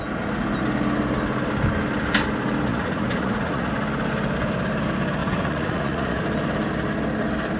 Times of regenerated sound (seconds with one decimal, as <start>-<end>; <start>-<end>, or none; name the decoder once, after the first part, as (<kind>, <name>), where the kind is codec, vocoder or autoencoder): 2.7-3.7 (vocoder, Vocos); 5.2-6.2